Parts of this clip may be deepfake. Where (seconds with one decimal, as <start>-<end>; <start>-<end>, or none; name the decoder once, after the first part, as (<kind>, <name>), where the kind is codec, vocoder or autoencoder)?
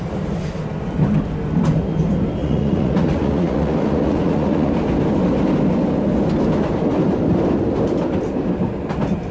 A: 2.4-4.7 (vocoder, Vocos)